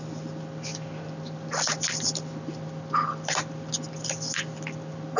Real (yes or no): yes